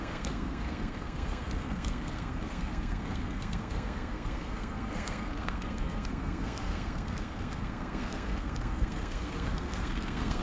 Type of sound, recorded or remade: remade